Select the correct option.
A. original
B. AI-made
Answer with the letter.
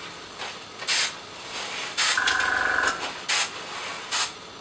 A